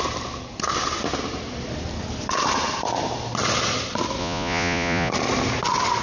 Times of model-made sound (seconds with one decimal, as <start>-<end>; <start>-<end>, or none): 4.2-5.1